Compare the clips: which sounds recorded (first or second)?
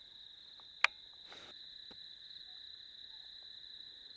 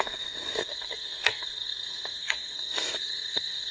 first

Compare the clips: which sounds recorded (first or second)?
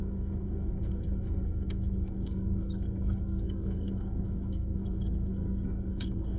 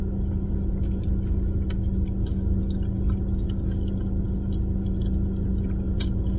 second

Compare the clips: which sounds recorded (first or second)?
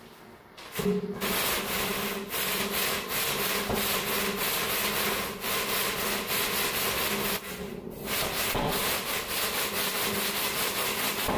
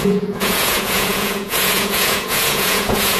first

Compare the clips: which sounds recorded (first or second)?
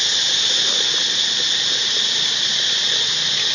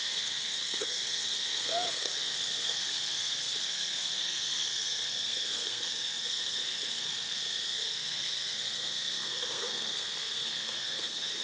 first